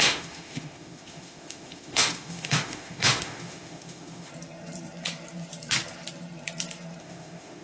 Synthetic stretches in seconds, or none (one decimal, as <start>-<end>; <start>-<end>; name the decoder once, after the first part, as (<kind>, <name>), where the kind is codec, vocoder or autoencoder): 0.0-4.3 (autoencoder, DAC-VAE); 7.0-7.6